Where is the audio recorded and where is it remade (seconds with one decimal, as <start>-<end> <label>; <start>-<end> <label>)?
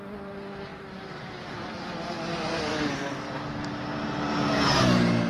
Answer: 0.0-5.3 recorded